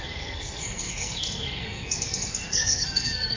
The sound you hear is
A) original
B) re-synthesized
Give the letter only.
B